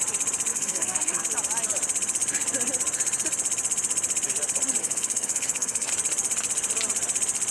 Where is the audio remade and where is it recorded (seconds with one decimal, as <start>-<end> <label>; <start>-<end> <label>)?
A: 0.0-0.5 recorded; 0.5-1.2 remade; 1.2-4.8 recorded; 4.8-5.9 remade; 5.9-7.5 recorded